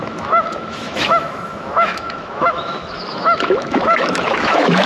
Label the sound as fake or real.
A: fake